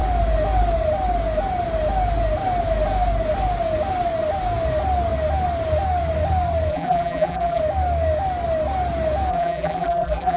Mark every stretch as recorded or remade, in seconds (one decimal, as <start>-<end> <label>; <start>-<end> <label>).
0.0-6.7 recorded; 6.7-7.6 remade; 7.6-9.3 recorded; 9.3-10.4 remade